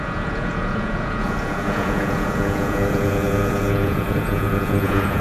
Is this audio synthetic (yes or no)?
yes